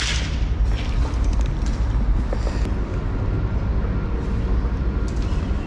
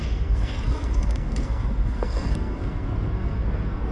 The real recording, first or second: first